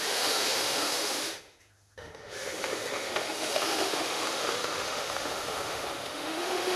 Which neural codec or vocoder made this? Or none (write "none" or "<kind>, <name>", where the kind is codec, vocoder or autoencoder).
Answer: autoencoder, DAC-VAE